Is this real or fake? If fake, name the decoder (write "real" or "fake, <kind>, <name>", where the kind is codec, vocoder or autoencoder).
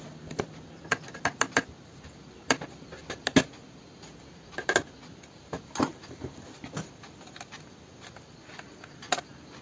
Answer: real